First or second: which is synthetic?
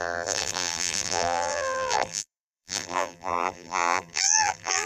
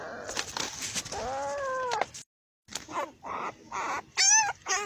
first